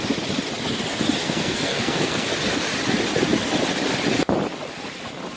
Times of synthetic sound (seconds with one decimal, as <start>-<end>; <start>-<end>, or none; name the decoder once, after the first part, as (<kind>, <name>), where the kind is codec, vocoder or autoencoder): 1.2-2.3 (codec, SNAC)